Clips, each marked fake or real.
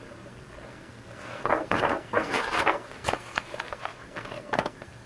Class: fake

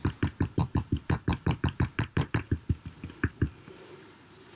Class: fake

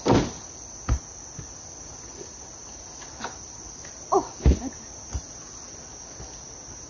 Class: real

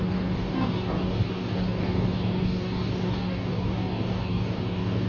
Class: fake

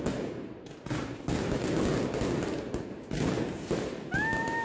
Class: real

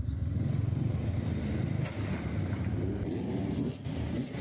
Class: real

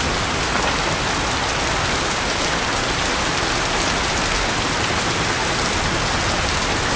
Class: real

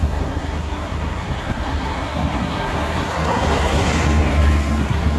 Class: fake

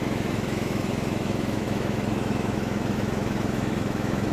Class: fake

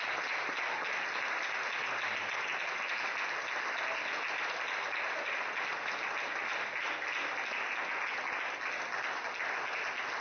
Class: real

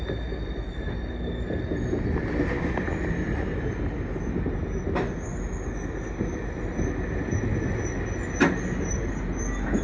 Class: real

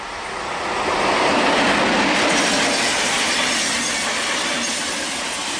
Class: real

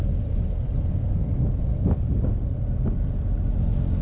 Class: real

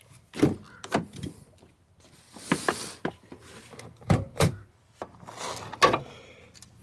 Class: real